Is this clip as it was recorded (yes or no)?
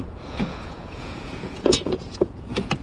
no